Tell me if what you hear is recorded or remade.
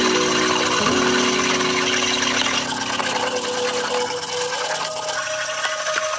recorded